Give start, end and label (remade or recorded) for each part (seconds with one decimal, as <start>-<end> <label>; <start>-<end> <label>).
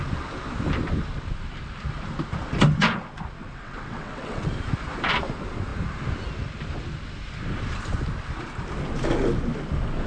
0.0-3.4 recorded; 3.4-4.5 remade; 4.5-10.1 recorded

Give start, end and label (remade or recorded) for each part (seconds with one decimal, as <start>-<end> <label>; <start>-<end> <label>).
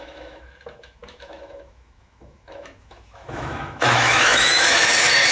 0.0-5.3 remade